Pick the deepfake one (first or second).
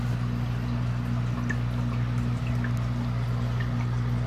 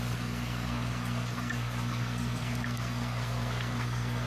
second